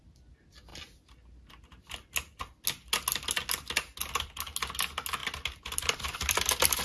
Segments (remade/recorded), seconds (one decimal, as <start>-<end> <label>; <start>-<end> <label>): 0.0-5.2 recorded; 5.2-6.8 remade